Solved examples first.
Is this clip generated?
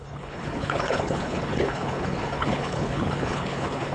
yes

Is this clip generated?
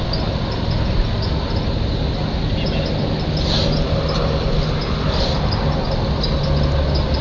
no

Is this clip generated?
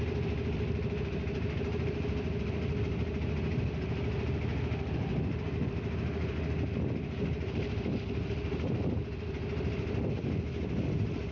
no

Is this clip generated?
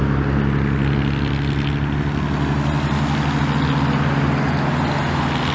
no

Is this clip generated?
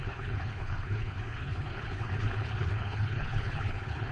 yes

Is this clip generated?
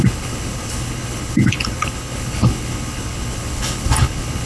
yes